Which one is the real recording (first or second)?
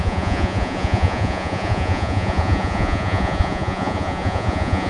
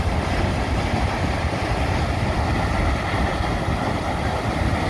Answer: second